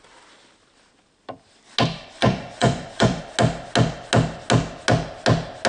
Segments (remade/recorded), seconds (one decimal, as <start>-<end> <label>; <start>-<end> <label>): 0.0-2.1 recorded; 2.1-3.2 remade; 3.2-5.7 recorded